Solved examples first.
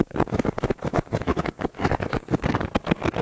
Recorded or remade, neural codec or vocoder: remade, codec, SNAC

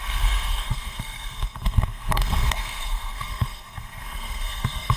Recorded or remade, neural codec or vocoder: remade, codec, SNAC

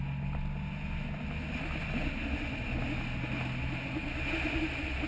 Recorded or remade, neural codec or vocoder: recorded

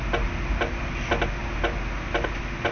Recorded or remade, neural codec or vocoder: recorded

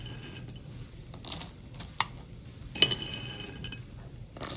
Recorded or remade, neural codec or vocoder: recorded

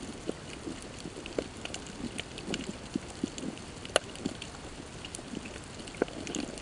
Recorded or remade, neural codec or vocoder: recorded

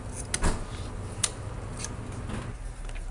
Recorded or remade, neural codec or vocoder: recorded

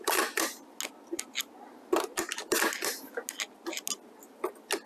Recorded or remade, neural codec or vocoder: recorded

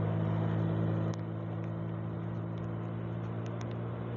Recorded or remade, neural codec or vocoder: recorded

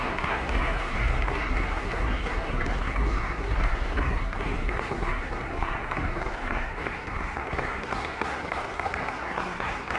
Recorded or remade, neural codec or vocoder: remade, codec, SNAC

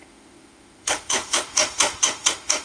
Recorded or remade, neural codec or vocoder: remade, autoencoder, DAC-VAE